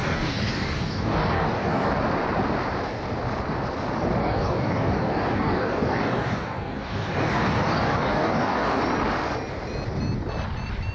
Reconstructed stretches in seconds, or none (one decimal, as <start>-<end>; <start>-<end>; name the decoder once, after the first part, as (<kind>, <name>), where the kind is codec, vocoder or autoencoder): 0.0-1.9 (codec, DAC); 4.2-8.8

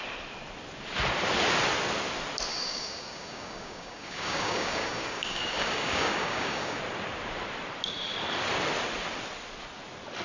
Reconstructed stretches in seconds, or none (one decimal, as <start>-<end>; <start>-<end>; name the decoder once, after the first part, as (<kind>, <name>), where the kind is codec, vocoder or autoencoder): 2.5-6.8 (codec, DAC)